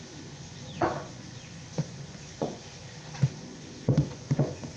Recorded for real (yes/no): no